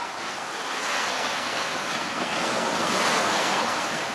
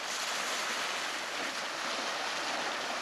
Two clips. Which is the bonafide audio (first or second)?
second